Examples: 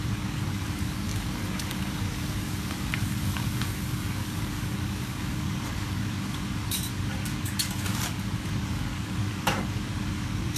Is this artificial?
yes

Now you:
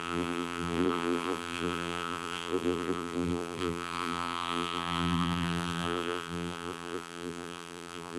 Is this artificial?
yes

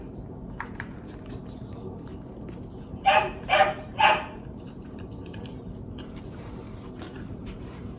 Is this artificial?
yes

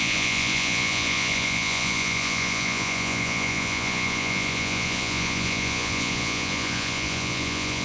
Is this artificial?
yes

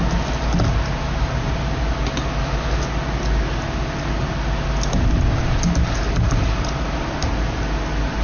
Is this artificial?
no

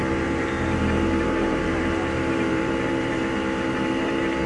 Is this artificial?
yes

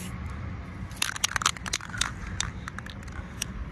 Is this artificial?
no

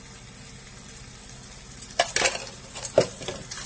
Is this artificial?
no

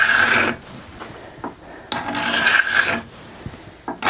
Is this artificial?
no